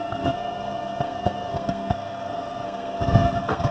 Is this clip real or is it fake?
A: fake